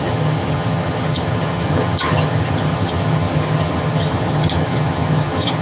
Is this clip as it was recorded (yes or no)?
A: no